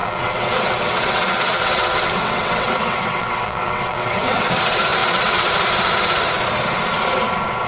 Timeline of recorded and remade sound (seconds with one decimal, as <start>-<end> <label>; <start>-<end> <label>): 0.0-4.6 remade; 4.6-5.0 recorded; 5.0-5.5 remade; 5.5-7.7 recorded